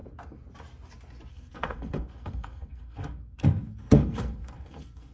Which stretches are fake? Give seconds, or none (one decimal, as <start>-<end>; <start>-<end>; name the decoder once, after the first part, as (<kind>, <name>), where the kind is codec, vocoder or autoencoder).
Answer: 1.3-5.1 (codec, SNAC)